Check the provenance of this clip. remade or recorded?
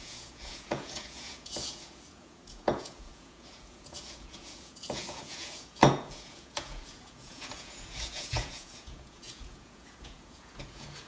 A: remade